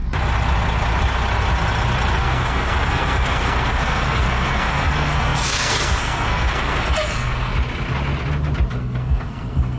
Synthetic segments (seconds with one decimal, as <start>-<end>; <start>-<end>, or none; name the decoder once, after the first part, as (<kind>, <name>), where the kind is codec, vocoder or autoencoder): 2.2-7.5 (codec, SNAC); 8.7-9.8